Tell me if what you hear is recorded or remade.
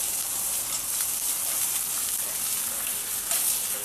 recorded